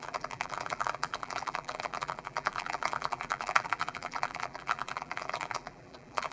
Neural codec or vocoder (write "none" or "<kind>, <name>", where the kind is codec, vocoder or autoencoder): vocoder, BigVGAN v2